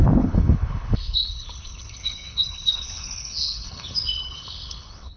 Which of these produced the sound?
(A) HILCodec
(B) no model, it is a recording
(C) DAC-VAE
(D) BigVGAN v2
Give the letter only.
A